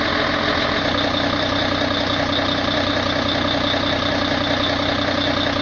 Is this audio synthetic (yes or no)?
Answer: no